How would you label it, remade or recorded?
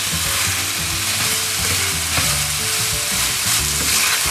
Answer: recorded